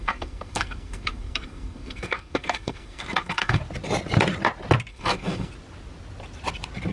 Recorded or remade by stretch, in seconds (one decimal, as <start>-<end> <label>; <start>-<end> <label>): 0.0-3.6 remade; 3.6-4.9 recorded; 4.9-5.5 remade; 5.5-6.9 recorded